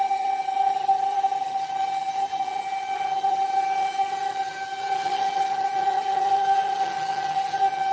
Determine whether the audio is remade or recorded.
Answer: remade